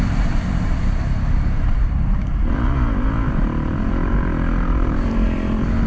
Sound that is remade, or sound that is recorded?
remade